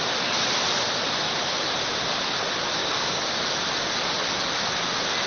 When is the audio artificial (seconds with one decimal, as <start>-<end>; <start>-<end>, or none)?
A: 2.8-3.4